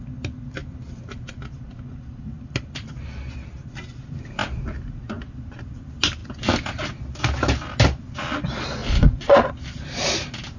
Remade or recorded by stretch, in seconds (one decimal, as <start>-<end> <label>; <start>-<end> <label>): 0.0-8.8 recorded; 8.8-9.5 remade; 9.5-10.6 recorded